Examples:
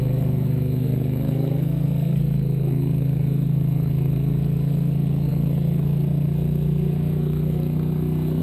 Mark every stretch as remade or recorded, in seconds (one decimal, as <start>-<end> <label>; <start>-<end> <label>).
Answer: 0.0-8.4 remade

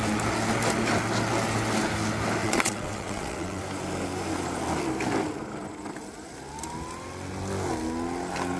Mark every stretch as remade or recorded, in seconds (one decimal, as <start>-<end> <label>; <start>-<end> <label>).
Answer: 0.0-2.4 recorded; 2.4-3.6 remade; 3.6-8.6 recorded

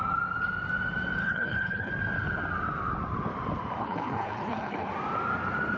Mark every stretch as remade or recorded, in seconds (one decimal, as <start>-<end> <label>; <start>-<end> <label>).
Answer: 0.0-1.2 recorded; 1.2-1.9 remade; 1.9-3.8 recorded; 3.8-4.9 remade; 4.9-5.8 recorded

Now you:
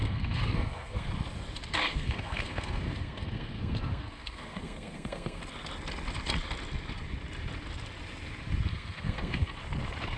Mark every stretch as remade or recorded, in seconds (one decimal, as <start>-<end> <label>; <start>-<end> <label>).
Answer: 0.0-1.1 remade; 1.1-1.9 recorded; 1.9-5.4 remade; 5.4-8.7 recorded; 8.7-9.6 remade; 9.6-10.2 recorded

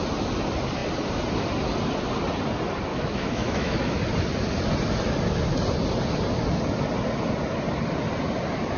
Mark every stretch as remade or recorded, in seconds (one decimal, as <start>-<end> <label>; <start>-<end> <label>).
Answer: 0.0-2.9 recorded; 2.9-4.0 remade; 4.0-8.8 recorded

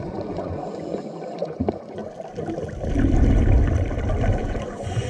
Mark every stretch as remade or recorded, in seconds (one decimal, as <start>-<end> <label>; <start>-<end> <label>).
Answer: 0.0-2.0 remade; 2.0-4.4 recorded; 4.4-5.1 remade

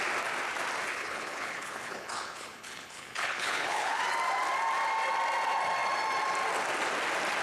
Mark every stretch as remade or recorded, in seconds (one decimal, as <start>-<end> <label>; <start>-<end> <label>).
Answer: 0.0-0.9 recorded; 0.9-4.0 remade; 4.0-7.4 recorded

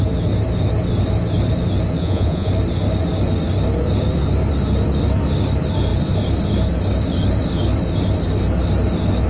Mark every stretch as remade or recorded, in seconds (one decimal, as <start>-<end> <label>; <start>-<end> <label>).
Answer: 0.0-2.0 recorded; 2.0-2.5 remade; 2.5-9.3 recorded